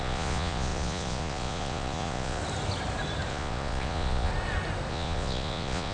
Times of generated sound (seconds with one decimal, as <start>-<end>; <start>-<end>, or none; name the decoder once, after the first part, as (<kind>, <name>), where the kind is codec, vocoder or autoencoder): 0.0-2.4 (vocoder, Vocos); 3.3-4.3; 4.9-5.9